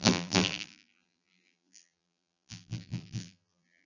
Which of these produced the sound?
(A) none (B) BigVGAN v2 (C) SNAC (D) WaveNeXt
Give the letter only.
B